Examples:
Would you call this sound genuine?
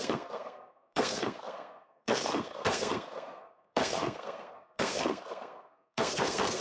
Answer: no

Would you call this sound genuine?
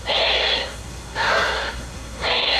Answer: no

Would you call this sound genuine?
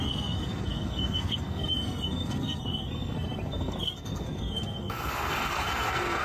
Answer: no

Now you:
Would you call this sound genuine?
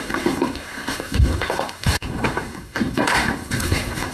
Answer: no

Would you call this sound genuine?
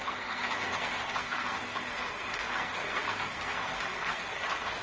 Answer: no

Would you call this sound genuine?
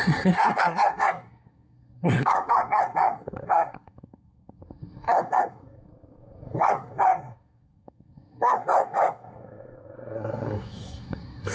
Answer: no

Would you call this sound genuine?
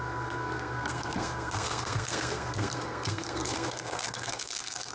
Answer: no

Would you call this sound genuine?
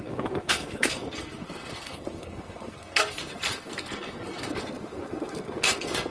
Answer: no